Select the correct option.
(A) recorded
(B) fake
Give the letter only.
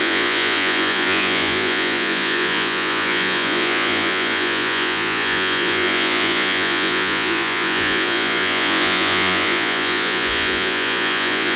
B